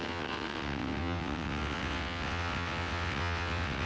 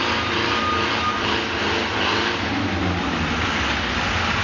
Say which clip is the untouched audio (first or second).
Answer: second